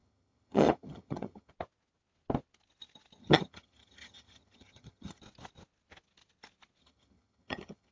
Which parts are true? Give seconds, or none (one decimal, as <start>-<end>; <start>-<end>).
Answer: 1.5-3.2; 5.2-6.8